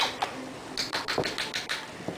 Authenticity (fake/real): real